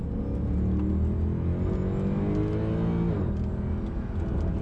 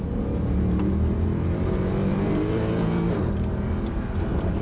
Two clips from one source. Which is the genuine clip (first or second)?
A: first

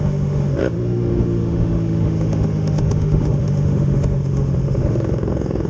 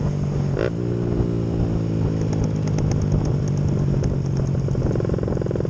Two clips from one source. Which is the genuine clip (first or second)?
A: second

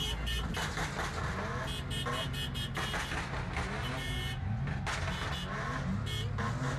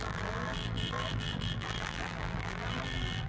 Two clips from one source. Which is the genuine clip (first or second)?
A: first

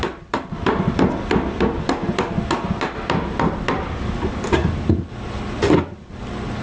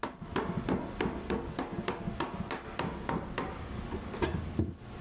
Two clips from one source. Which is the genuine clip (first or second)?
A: second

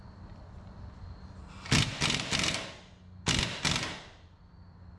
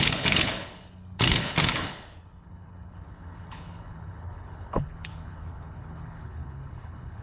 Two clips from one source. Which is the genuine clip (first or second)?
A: first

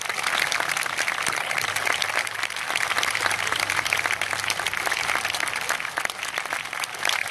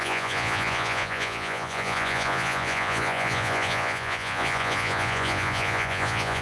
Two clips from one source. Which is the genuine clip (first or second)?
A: first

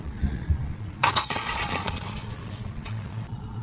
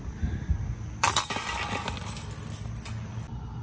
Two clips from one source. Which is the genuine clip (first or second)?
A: second